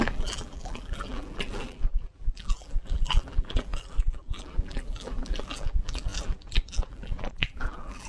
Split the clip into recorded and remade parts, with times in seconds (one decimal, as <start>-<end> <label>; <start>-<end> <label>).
0.0-8.1 remade